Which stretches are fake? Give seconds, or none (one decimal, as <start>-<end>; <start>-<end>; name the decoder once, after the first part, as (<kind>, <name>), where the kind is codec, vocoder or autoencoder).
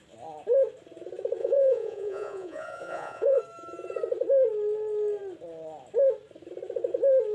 1.4-3.4 (vocoder, Vocos)